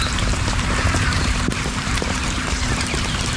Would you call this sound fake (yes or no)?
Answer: yes